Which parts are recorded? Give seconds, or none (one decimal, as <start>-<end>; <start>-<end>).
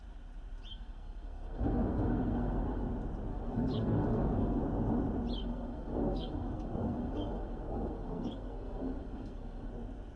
0.0-0.7; 2.9-3.3; 4.6-5.4; 9.7-10.2